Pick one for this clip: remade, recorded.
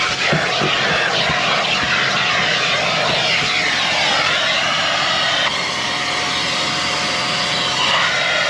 recorded